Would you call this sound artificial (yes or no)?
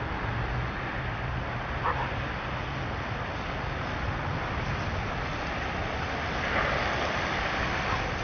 no